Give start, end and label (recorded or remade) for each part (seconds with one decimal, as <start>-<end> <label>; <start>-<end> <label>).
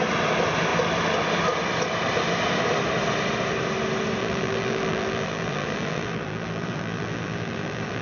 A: 0.0-4.2 recorded; 4.2-8.0 remade